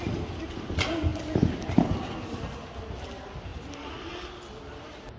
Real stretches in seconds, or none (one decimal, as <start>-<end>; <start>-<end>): 0.0-5.2